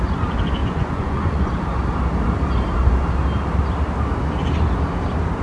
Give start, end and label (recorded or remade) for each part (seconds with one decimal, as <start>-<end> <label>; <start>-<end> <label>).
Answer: 0.0-0.6 recorded; 0.6-1.5 remade; 1.5-5.4 recorded